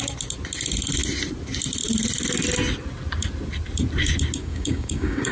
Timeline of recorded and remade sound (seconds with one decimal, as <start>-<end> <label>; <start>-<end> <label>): 0.0-4.4 recorded; 4.4-5.3 remade